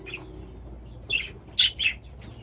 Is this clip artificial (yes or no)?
no